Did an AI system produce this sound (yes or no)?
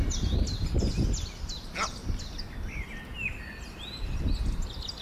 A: no